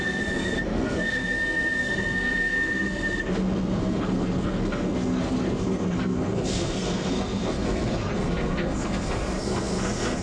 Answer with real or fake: fake